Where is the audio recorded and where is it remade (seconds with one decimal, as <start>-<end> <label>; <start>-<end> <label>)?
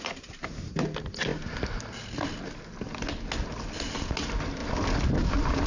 0.0-5.7 recorded